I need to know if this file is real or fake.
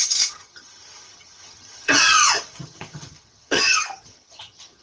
fake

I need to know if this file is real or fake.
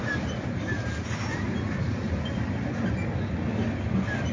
real